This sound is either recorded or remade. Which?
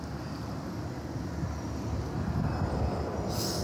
recorded